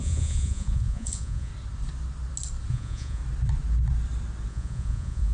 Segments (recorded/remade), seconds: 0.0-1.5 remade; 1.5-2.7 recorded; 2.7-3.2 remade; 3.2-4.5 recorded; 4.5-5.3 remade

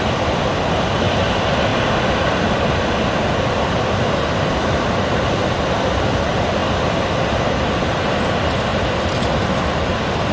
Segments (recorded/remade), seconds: 0.0-8.7 recorded; 8.7-9.4 remade; 9.4-10.3 recorded

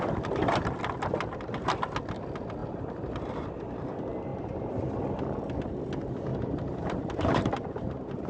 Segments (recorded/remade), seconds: 0.0-2.6 recorded; 2.6-3.5 remade; 3.5-6.3 recorded; 6.3-8.3 remade

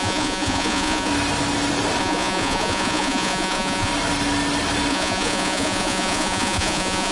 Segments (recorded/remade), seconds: 0.0-1.1 remade; 1.1-2.0 recorded; 2.0-3.9 remade; 3.9-4.9 recorded; 4.9-7.1 remade

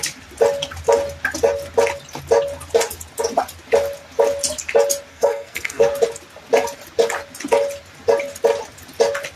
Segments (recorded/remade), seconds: 0.0-5.1 recorded; 5.1-5.9 remade; 5.9-9.4 recorded